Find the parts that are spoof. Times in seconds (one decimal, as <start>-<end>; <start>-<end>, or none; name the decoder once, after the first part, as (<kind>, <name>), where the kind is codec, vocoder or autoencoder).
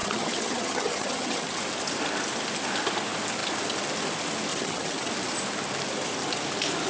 0.0-1.6 (vocoder, HiFi-GAN); 4.5-5.1